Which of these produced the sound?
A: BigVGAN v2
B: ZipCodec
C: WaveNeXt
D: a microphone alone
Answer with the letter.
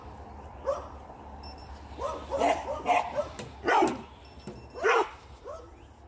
D